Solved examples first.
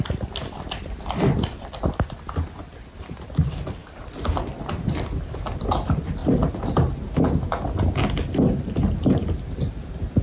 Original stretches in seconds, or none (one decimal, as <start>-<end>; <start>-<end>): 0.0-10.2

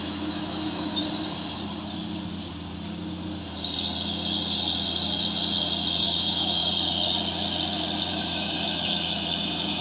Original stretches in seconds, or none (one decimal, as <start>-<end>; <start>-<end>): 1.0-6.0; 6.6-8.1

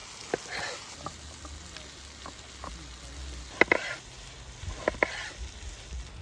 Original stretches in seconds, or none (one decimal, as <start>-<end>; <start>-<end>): 0.0-6.2

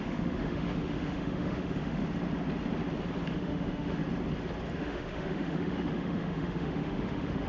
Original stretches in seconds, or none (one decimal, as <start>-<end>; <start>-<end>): 2.0-3.3; 4.0-4.7